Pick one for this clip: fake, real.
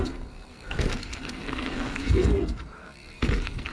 fake